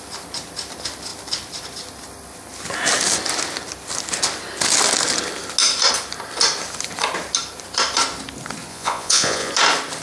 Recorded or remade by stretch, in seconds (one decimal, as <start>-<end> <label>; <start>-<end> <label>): 0.0-8.7 recorded; 8.7-9.5 remade; 9.5-10.0 recorded